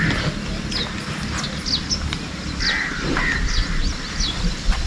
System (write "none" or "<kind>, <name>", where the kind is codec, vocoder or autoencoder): none